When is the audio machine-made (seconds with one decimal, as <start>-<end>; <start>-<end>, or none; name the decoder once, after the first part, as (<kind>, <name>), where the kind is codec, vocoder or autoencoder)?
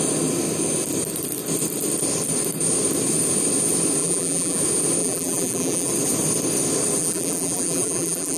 4.0-4.6 (vocoder, BigVGAN v2); 5.0-5.9; 7.0-8.4